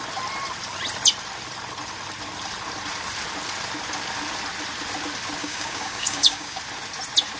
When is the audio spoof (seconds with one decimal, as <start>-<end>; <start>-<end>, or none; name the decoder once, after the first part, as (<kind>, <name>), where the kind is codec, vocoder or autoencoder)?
5.4-6.6 (codec, DAC)